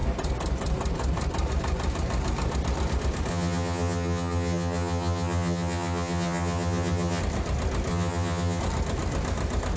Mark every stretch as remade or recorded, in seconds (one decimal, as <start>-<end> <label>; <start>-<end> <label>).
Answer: 0.0-3.3 recorded; 3.3-7.2 remade; 7.2-7.9 recorded; 7.9-8.6 remade; 8.6-9.8 recorded